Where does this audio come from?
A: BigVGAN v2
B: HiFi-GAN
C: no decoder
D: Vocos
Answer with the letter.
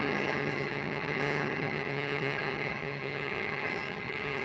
B